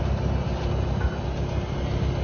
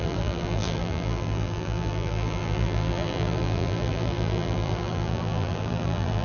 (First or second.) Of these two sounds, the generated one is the second